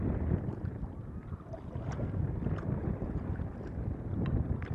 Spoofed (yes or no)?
no